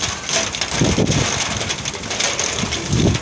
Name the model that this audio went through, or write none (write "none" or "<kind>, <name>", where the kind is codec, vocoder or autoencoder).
none